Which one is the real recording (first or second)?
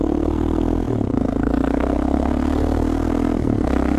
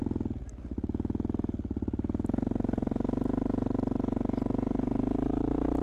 second